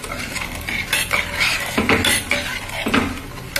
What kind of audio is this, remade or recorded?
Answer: recorded